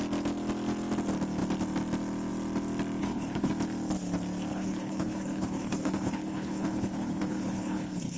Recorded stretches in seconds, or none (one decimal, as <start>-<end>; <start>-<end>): 0.0-3.0; 3.5-4.5